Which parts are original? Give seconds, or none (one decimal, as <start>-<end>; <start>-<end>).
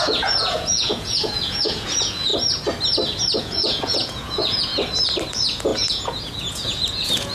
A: 2.3-3.4; 4.7-5.3